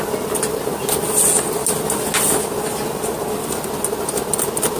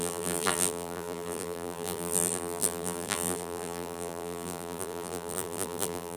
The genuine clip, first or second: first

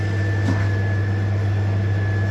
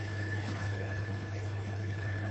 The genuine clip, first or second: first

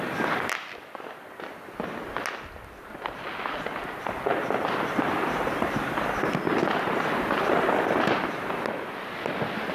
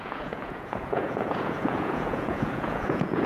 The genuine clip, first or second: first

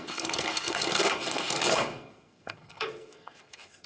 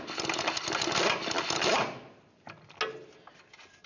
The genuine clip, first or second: second